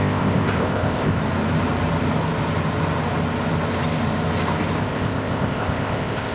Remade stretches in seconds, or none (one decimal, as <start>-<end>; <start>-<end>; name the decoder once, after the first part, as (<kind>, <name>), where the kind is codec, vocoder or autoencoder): 0.0-1.2 (codec, ZipCodec); 4.8-6.3